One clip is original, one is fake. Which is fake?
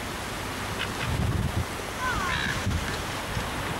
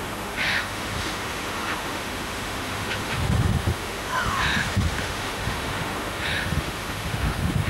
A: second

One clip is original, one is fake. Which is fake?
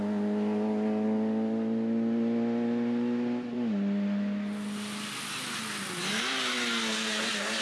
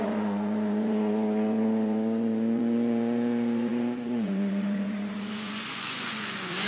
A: second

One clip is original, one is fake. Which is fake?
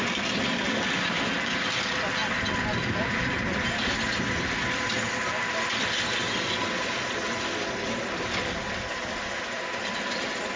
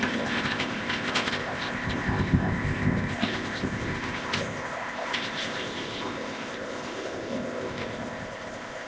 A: second